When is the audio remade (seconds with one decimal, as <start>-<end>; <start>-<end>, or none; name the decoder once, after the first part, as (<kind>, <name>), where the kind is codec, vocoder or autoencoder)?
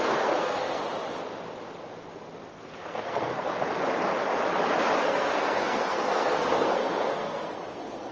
0.0-0.8 (codec, SNAC); 2.5-3.5; 5.0-8.1